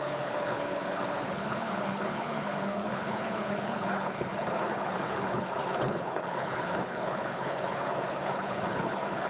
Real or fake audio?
fake